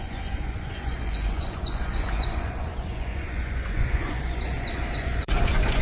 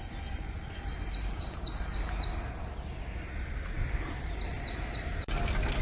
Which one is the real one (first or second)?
second